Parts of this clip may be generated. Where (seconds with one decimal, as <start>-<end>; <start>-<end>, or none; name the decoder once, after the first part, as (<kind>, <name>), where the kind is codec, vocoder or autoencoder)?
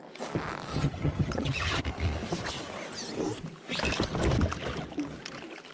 0.7-1.8 (vocoder, HiFi-GAN)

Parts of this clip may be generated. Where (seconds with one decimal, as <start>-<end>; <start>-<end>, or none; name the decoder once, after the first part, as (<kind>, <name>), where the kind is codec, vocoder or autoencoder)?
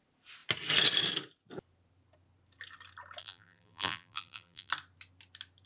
3.2-4.7 (vocoder, BigVGAN v2)